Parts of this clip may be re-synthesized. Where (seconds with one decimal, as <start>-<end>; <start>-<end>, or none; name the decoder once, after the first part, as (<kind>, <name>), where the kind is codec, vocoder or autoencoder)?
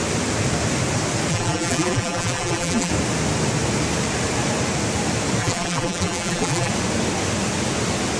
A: 1.3-2.9 (vocoder, BigVGAN v2); 5.4-6.7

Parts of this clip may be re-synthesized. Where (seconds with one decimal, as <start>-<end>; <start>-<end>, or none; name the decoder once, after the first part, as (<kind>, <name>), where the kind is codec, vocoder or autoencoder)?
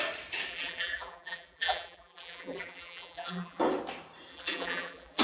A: 0.5-3.6 (vocoder, BigVGAN v2); 4.3-5.2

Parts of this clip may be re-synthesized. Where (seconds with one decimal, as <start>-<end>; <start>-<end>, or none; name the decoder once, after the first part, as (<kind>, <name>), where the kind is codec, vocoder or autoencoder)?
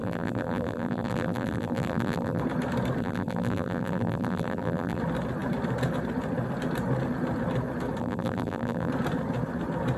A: 0.0-2.4 (vocoder, BigVGAN v2); 3.0-5.0; 8.0-8.9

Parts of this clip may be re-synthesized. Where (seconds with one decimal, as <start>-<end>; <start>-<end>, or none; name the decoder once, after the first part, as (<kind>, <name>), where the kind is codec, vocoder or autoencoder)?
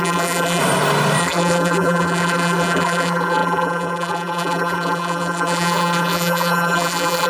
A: 0.0-0.6 (vocoder, BigVGAN v2); 1.2-7.3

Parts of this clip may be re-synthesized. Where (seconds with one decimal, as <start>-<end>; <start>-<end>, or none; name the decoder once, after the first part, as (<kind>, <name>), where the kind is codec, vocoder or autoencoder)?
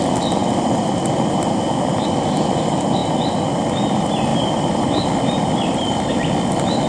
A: 4.3-6.1 (vocoder, BigVGAN v2)